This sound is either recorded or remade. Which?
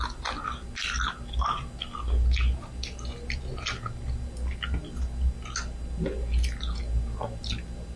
recorded